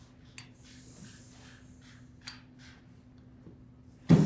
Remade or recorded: recorded